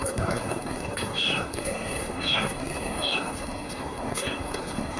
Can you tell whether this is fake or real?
fake